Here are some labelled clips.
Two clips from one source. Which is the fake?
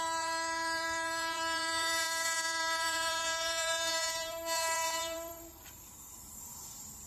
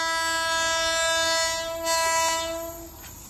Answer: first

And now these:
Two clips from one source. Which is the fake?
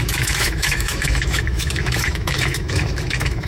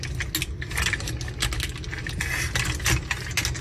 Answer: first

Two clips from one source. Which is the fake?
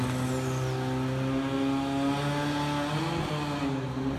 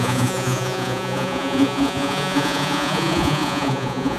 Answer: second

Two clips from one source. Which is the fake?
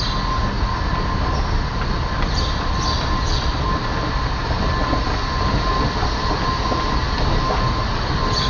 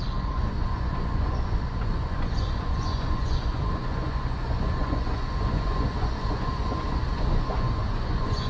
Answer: second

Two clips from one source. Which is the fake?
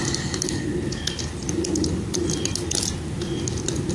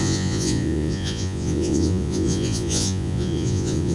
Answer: second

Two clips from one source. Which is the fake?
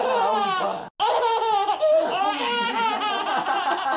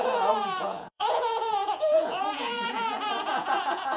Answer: second